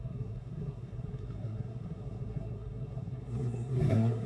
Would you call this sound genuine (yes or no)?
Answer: no